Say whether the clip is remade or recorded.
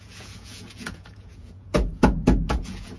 remade